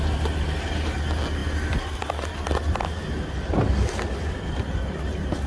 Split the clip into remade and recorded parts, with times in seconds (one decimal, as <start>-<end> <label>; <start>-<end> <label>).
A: 0.0-5.5 recorded